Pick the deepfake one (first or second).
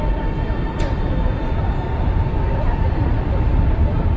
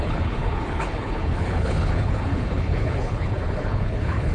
second